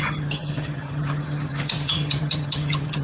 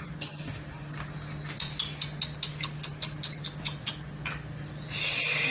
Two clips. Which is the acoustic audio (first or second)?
second